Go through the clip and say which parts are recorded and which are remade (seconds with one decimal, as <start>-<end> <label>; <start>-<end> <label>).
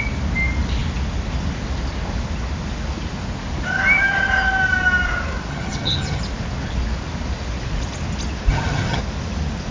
0.0-5.5 recorded; 5.5-6.2 remade; 6.2-8.5 recorded; 8.5-9.0 remade; 9.0-9.7 recorded